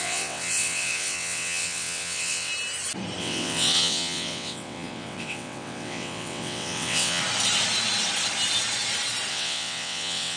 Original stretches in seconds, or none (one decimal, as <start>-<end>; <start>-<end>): 2.5-3.2; 7.2-9.3